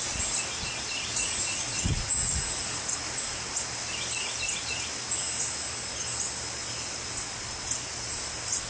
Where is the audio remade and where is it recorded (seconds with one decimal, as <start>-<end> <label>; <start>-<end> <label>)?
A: 0.0-1.1 recorded; 1.1-2.8 remade; 2.8-8.7 recorded